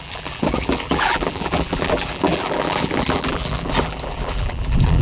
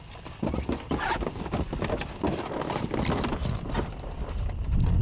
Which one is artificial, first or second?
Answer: first